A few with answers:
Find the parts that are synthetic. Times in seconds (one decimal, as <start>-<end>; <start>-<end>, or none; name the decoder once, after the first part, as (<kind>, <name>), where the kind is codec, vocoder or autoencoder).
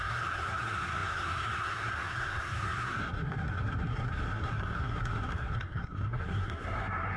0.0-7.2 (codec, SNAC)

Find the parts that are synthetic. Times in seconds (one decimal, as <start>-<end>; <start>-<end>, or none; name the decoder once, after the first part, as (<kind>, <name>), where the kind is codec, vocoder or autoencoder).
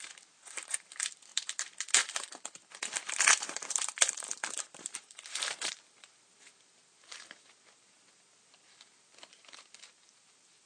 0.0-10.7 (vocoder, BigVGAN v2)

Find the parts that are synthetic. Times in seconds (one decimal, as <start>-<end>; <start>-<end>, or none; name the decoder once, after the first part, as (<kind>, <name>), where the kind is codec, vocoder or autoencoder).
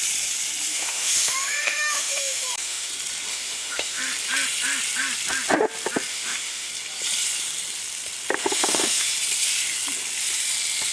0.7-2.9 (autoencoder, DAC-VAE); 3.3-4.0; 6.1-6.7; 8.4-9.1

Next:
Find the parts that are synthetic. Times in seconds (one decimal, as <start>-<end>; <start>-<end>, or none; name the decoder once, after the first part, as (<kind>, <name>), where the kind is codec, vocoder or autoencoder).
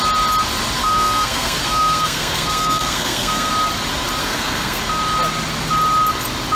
0.8-3.5 (codec, SNAC); 4.2-4.8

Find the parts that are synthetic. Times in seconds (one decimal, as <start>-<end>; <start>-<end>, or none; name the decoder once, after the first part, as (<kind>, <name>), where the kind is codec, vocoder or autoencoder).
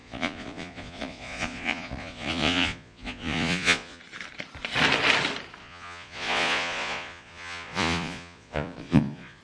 0.0-4.0 (vocoder, Vocos); 5.6-9.4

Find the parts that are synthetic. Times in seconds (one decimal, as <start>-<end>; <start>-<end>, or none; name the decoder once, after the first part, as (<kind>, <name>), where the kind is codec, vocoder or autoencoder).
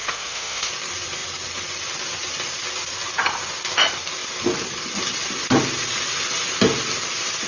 0.0-0.7 (autoencoder, DAC-VAE)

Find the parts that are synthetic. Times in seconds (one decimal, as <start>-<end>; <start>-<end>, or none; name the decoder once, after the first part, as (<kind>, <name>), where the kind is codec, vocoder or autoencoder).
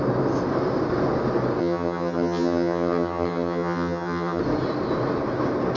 1.6-4.4 (vocoder, HiFi-GAN)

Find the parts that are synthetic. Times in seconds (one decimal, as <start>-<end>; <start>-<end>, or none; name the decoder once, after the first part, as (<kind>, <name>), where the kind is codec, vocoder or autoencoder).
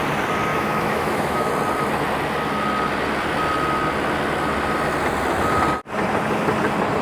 0.5-1.5 (autoencoder, DAC-VAE)